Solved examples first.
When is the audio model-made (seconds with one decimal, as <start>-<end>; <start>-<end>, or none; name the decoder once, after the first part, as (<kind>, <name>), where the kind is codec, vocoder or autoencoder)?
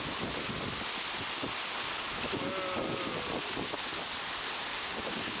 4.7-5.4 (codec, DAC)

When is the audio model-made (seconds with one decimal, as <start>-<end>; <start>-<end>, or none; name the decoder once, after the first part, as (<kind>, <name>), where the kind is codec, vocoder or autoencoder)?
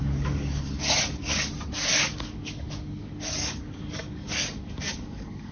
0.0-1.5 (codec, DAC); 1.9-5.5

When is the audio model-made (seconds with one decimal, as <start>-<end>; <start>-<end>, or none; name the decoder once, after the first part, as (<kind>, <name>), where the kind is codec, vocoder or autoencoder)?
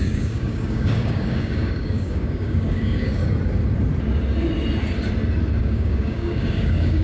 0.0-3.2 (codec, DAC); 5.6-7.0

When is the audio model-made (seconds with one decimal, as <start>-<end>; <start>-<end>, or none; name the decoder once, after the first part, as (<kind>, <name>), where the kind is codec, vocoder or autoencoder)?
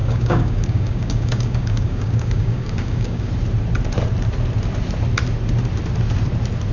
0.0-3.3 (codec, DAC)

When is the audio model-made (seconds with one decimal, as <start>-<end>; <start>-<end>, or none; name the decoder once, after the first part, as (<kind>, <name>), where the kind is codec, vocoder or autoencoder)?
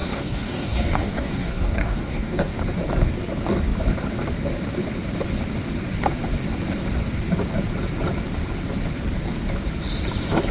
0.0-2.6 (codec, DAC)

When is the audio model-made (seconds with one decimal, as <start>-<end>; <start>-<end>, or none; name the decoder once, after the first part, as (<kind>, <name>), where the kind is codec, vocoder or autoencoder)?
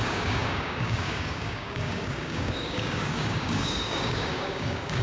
0.0-5.0 (codec, DAC)